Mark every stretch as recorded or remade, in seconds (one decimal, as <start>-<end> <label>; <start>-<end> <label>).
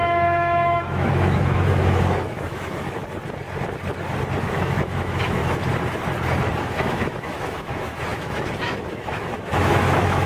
0.0-3.0 remade; 3.0-4.4 recorded; 4.4-5.4 remade; 5.4-6.6 recorded; 6.6-10.3 remade